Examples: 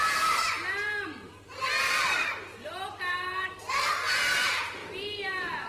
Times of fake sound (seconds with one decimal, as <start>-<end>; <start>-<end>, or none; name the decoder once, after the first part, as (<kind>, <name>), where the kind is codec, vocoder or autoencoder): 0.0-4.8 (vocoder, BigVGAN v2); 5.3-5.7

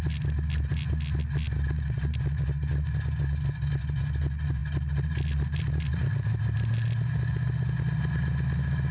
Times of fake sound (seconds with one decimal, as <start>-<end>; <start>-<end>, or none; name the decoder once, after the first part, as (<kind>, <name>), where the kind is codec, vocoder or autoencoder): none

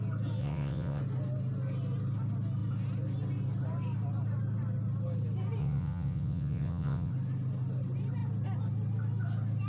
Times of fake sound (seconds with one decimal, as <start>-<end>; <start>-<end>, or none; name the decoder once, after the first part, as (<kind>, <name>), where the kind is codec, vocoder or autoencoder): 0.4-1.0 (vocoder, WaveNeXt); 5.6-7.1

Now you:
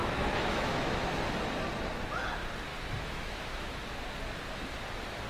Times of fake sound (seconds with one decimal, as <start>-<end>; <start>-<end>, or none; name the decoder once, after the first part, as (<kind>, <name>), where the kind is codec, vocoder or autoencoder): 0.0-1.1 (autoencoder, DAC-VAE); 2.7-3.7

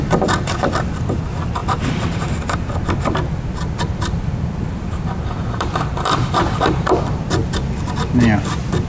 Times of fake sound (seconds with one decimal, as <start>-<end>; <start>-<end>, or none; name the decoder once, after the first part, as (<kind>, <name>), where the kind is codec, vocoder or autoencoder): 0.0-1.6 (vocoder, BigVGAN v2); 2.3-8.9

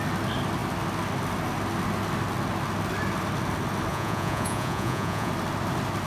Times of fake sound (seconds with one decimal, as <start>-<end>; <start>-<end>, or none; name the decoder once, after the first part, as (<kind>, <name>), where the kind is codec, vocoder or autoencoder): 3.9-5.3 (vocoder, Vocos)

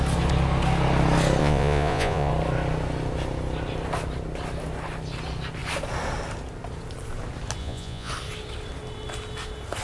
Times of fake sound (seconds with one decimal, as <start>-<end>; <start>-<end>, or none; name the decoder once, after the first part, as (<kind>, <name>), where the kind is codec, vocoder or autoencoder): 1.4-2.3 (vocoder, Vocos); 7.6-8.1

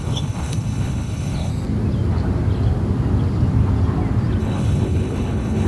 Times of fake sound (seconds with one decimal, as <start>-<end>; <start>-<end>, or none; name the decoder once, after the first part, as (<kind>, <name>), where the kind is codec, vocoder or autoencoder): 0.0-1.5 (codec, HILCodec); 4.4-5.7